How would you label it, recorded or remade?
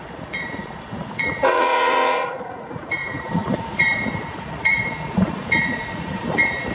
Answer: remade